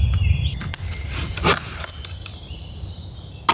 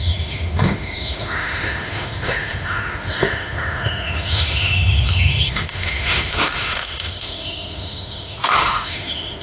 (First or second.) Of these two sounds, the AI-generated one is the second